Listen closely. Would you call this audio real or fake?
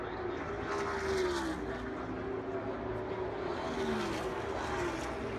real